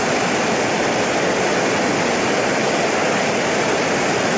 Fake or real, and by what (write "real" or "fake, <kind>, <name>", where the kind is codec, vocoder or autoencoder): real